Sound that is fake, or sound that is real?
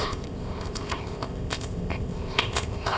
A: fake